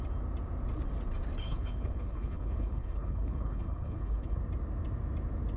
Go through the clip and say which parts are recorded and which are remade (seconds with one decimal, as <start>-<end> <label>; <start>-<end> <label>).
0.0-1.4 recorded; 1.4-4.4 remade; 4.4-5.6 recorded

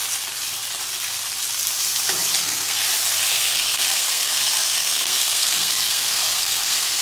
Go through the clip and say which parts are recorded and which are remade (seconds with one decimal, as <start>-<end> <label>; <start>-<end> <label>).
0.0-2.4 recorded; 2.4-2.8 remade; 2.8-3.3 recorded; 3.3-7.0 remade